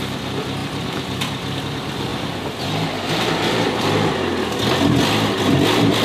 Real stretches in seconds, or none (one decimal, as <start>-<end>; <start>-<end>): 0.0-0.6; 1.6-6.0